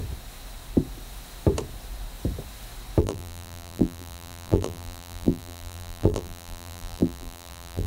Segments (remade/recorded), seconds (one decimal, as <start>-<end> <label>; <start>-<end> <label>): 0.0-3.0 recorded; 3.0-7.9 remade